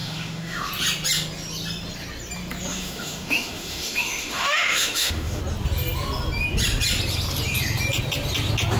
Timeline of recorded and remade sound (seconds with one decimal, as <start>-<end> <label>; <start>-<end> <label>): 0.0-0.7 remade; 0.7-2.7 recorded; 2.7-5.4 remade; 5.4-8.8 recorded